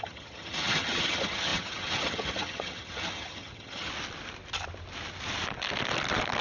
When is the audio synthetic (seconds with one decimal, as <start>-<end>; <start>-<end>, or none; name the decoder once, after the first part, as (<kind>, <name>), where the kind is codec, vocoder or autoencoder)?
0.0-3.9 (vocoder, HiFi-GAN)